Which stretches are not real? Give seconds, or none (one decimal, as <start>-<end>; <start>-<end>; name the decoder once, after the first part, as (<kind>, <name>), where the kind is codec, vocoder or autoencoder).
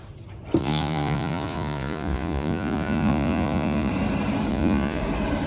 0.6-3.9 (vocoder, Vocos); 4.5-5.0